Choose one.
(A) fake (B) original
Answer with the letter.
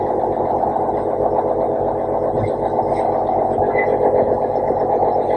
B